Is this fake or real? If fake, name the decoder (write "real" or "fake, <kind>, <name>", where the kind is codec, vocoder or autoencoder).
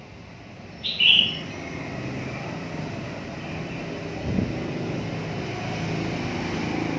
real